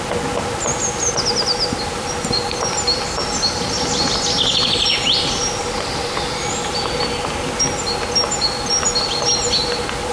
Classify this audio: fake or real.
real